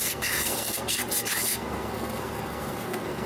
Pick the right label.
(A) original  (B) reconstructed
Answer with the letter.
B